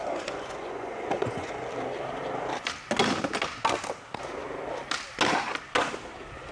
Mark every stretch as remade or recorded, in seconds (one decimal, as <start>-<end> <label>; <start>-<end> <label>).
0.0-1.5 remade; 1.5-6.5 recorded

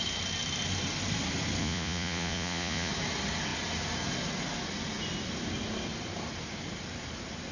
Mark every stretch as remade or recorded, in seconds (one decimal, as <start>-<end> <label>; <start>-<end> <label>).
0.0-1.6 recorded; 1.6-2.9 remade; 2.9-7.5 recorded